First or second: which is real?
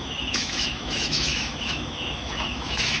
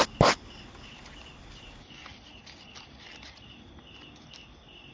second